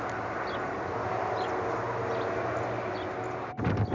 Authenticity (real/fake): real